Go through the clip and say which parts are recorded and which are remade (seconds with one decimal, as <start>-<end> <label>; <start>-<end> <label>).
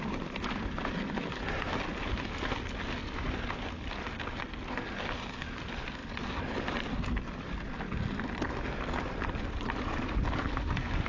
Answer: 0.0-11.1 recorded